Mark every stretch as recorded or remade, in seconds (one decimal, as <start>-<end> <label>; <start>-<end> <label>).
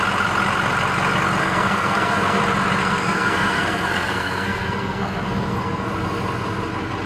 0.0-1.4 recorded; 1.4-2.4 remade; 2.4-2.8 recorded; 2.8-5.9 remade; 5.9-7.1 recorded